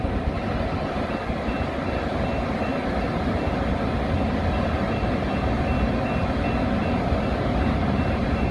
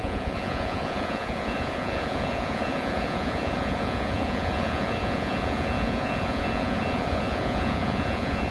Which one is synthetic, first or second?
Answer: second